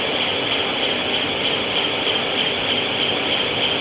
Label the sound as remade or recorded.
recorded